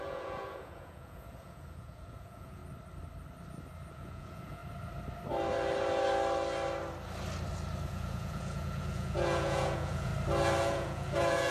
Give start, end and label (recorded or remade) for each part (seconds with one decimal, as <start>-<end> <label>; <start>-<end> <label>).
0.0-2.6 remade; 2.6-3.9 recorded; 3.9-4.6 remade; 4.6-7.9 recorded; 7.9-10.1 remade; 10.1-10.6 recorded; 10.6-11.5 remade